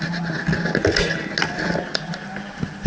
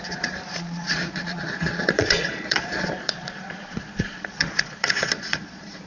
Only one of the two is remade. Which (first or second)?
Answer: second